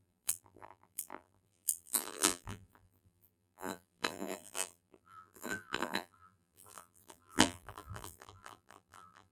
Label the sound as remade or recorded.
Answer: remade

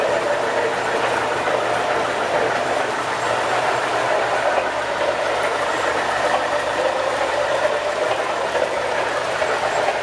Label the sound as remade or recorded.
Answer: remade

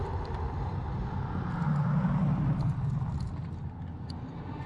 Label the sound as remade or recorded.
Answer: recorded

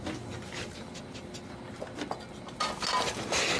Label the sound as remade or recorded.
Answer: recorded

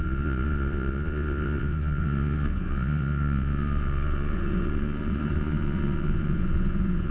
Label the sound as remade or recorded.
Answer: remade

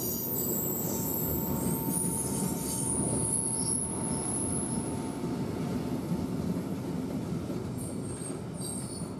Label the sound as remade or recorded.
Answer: recorded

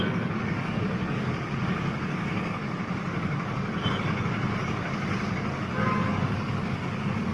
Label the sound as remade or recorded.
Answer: remade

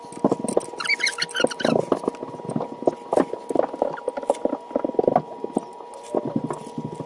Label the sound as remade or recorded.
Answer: recorded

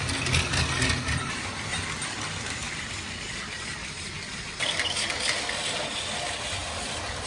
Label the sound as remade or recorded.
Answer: recorded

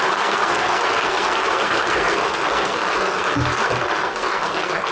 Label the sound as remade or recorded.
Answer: remade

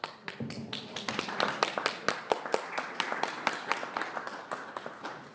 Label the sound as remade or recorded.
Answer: recorded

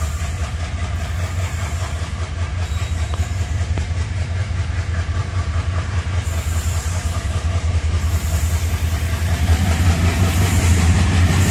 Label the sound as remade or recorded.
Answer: remade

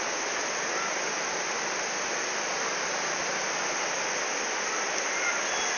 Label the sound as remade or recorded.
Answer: recorded